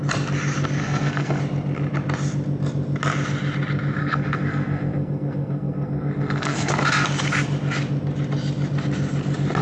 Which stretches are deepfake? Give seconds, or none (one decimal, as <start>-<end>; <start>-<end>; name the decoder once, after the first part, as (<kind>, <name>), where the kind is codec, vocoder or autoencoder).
0.8-1.4 (codec, SNAC); 4.0-6.7